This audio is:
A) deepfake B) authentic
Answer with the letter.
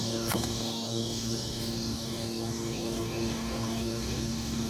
A